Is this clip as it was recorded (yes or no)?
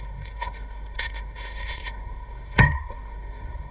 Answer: no